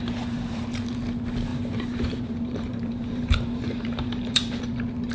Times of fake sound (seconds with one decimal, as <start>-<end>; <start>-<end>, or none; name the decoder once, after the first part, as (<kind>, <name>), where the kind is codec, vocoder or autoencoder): 0.0-0.6 (vocoder, BigVGAN v2); 1.5-4.6